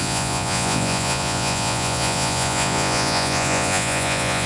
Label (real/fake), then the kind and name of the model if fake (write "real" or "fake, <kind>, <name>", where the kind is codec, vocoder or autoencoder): fake, vocoder, Vocos